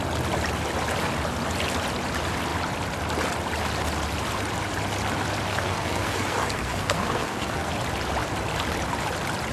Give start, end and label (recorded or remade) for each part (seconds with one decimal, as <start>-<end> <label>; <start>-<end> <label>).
0.0-5.5 recorded; 5.5-7.7 remade; 7.7-9.5 recorded